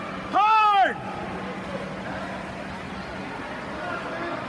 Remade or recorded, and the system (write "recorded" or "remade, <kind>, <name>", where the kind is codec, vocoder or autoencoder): recorded